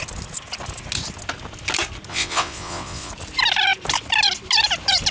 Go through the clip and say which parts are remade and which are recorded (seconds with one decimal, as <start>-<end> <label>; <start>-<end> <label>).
0.0-2.1 recorded; 2.1-3.1 remade; 3.1-5.1 recorded